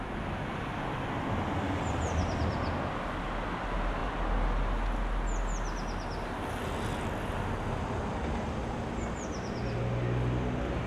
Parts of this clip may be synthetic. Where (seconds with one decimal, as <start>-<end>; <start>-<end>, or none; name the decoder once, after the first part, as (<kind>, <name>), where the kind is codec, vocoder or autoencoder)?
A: none